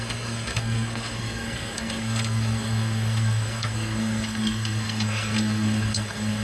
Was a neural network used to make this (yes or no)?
yes